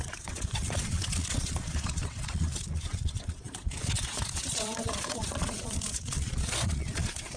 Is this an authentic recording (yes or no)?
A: no